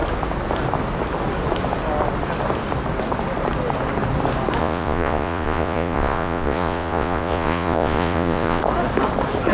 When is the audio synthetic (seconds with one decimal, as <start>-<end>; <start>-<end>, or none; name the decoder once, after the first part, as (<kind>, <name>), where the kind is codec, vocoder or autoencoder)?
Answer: 4.6-8.6 (vocoder, Vocos)